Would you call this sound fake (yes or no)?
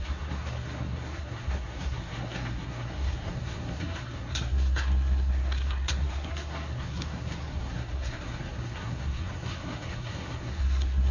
yes